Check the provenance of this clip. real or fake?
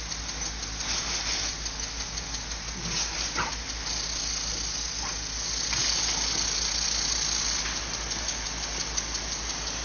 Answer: real